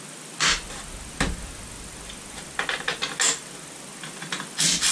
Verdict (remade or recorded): recorded